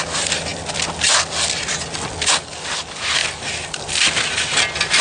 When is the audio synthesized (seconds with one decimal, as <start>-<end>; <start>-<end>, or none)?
none